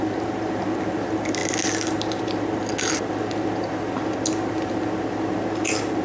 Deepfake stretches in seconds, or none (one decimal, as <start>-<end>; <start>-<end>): none